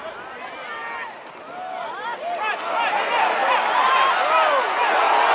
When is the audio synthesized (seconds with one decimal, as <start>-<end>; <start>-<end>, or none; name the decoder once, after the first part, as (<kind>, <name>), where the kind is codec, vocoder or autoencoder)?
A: none